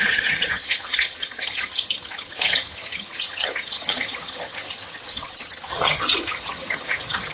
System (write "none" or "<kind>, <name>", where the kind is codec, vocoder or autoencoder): vocoder, HiFi-GAN